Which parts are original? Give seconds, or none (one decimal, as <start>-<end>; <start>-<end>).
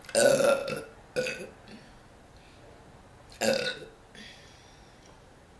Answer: 0.0-5.6